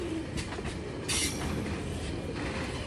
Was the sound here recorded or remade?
recorded